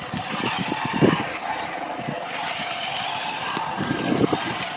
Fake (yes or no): no